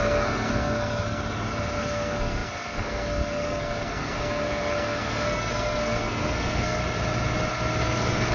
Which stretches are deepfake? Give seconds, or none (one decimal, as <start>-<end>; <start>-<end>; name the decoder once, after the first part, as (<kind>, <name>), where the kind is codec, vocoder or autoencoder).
0.0-1.2 (codec, SNAC); 1.8-6.8; 7.8-8.3